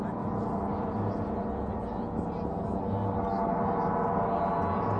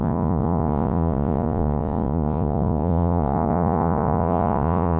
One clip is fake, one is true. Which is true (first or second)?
first